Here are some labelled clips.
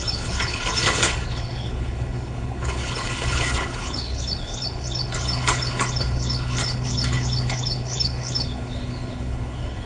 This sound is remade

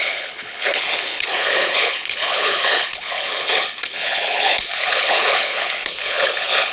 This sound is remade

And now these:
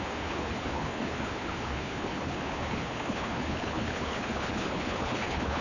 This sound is remade